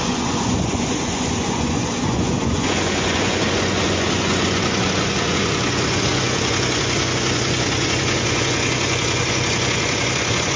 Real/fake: fake